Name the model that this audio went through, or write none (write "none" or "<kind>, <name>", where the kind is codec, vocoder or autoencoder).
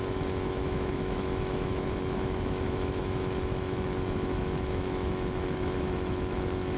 autoencoder, DAC-VAE